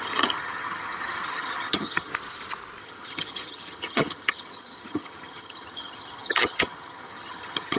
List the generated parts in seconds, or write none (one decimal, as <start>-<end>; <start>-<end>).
0.0-2.1; 2.8-7.8